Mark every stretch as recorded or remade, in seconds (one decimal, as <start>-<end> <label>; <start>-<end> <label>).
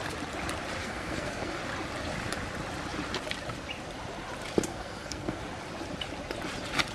0.0-0.8 recorded; 0.8-1.6 remade; 1.6-4.7 recorded; 4.7-5.4 remade; 5.4-6.9 recorded